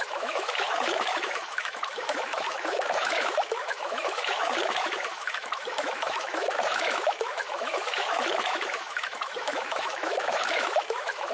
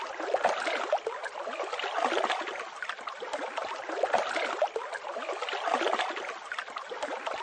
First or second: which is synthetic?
first